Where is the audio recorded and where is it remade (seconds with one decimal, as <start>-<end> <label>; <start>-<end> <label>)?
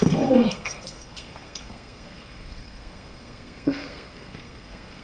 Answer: 0.0-5.0 remade